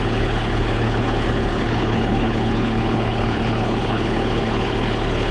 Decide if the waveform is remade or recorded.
remade